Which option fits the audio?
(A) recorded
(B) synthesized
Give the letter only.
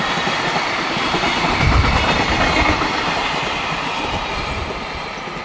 B